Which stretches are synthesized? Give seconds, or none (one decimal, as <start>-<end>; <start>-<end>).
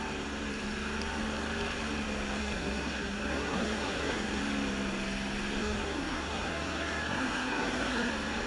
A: 2.4-4.4; 5.6-8.1